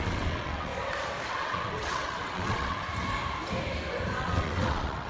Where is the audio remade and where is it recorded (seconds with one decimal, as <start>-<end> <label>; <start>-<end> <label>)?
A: 0.0-0.7 remade; 0.7-1.3 recorded; 1.3-2.9 remade; 2.9-4.2 recorded; 4.2-5.1 remade